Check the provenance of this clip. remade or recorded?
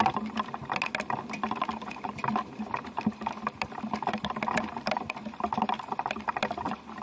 recorded